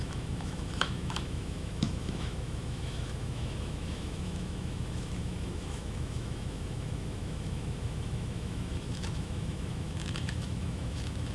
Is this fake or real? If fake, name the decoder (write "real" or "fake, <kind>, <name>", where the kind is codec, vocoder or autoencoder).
fake, autoencoder, DAC-VAE